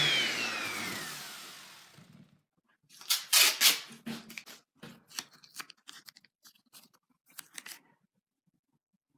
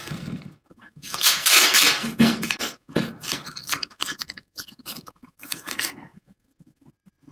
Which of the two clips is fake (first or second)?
second